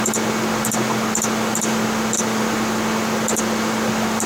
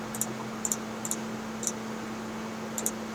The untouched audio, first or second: second